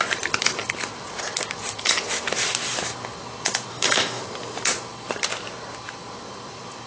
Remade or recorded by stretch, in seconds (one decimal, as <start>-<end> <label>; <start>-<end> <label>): 0.0-3.7 recorded; 3.7-4.2 remade; 4.2-6.9 recorded